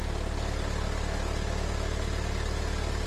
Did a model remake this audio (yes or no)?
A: no